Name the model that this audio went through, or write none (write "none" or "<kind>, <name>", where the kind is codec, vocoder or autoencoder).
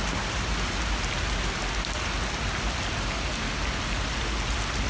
none